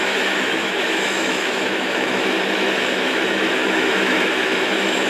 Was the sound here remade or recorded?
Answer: remade